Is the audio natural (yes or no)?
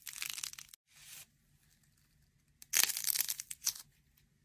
yes